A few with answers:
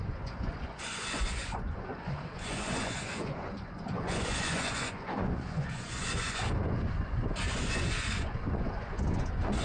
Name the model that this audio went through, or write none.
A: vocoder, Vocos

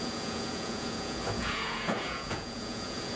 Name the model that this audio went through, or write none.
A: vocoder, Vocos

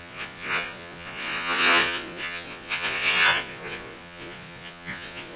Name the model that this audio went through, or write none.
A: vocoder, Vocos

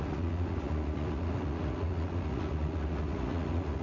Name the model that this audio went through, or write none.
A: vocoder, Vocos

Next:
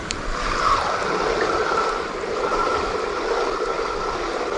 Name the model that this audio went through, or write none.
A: none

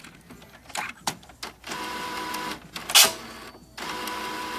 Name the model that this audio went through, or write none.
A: none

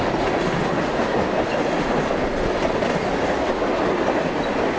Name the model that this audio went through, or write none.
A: none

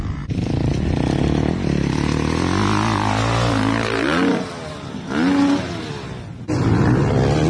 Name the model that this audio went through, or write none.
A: none